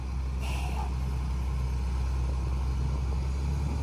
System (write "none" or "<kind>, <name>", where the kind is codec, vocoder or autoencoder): none